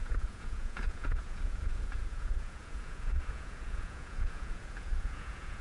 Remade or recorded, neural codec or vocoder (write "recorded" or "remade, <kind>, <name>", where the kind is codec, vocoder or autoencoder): remade, vocoder, Vocos